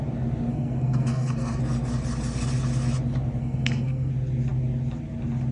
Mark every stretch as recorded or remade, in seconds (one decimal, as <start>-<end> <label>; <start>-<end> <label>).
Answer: 0.0-0.5 recorded; 0.5-1.6 remade; 1.6-3.4 recorded; 3.4-4.1 remade; 4.1-5.5 recorded